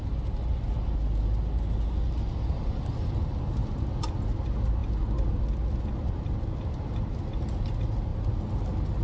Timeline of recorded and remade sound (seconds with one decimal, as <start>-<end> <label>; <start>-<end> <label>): 0.0-9.0 recorded